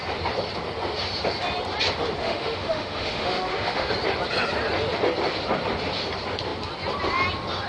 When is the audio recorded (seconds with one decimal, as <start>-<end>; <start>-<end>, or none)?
0.0-2.2; 3.9-7.7